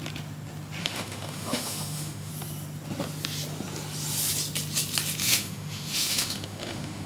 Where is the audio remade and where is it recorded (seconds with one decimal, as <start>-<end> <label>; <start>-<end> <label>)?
0.0-0.8 recorded; 0.8-2.3 remade; 2.3-5.2 recorded; 5.2-7.1 remade